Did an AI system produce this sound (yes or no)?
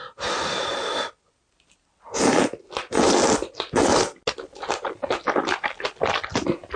no